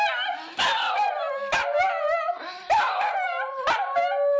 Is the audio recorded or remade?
recorded